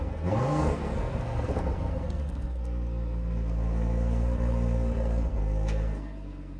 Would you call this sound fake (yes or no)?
yes